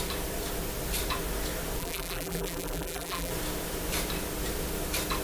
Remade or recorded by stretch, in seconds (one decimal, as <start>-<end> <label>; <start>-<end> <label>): 0.0-1.8 recorded; 1.8-3.3 remade; 3.3-5.2 recorded